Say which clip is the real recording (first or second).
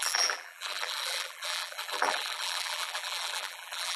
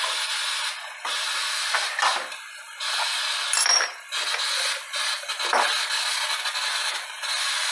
second